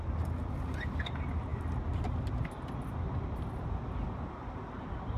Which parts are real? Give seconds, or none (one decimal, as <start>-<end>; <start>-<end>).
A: 0.0-5.2